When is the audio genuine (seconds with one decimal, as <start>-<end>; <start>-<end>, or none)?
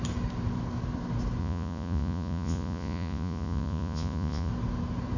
0.0-1.4; 4.5-5.2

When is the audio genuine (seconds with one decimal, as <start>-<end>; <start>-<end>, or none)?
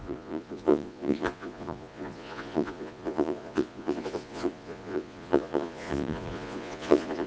none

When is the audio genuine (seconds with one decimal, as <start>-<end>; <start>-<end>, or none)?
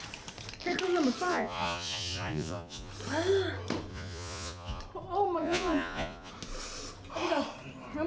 0.0-1.3; 2.9-3.9; 4.8-5.4; 6.3-8.1